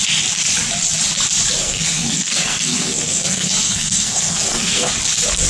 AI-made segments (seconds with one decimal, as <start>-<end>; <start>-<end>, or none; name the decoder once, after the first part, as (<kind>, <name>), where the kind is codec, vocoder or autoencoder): 1.6-4.9 (codec, SNAC)